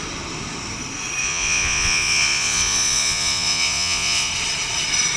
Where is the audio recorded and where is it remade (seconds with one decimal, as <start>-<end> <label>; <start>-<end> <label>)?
0.0-1.2 recorded; 1.2-4.3 remade; 4.3-5.2 recorded